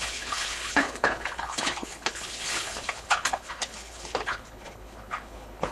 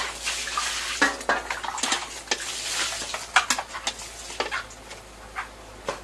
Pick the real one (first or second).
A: second